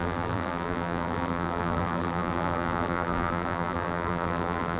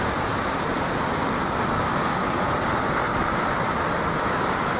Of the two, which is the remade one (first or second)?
first